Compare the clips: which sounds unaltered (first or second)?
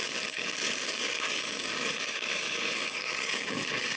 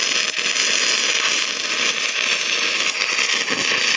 second